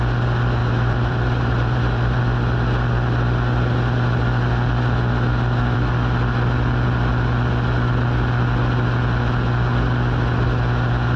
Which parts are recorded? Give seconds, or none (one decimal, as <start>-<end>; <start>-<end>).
0.0-0.6; 2.2-11.2